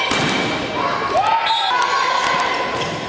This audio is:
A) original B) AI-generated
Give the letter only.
A